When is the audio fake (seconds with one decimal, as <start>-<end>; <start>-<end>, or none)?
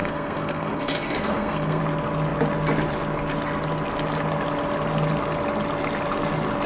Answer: 0.0-1.8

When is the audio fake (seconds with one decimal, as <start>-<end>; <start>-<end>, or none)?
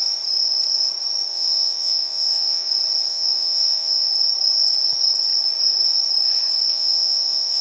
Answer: 1.3-2.7; 3.1-4.1; 6.7-7.6